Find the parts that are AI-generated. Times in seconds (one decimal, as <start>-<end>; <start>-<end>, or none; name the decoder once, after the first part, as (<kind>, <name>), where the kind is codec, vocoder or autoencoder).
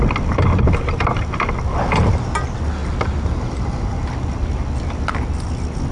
none